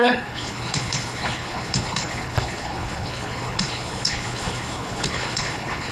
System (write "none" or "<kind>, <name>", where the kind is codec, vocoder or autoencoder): codec, HILCodec